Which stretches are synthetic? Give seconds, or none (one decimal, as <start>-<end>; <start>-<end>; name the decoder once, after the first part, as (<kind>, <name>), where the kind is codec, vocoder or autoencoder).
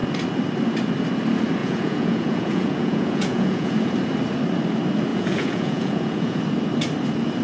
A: 1.6-3.8 (vocoder, Vocos); 5.1-6.4